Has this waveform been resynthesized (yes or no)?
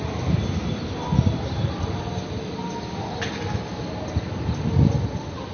no